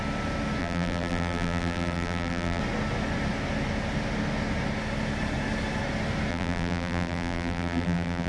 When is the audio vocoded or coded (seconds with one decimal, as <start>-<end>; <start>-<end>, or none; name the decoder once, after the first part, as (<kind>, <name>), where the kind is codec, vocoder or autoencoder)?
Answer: 0.6-2.6 (vocoder, BigVGAN v2); 6.3-8.3